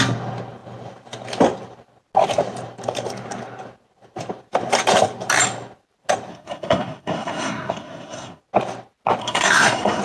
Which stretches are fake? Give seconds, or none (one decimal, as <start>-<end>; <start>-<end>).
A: 6.3-8.4; 9.2-10.0